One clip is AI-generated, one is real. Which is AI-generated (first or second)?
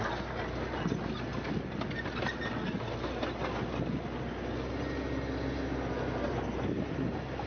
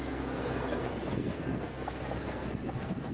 second